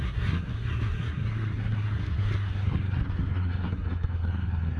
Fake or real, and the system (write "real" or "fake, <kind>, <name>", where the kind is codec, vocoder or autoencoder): fake, codec, SNAC